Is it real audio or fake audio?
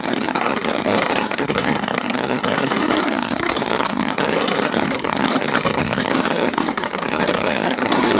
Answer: fake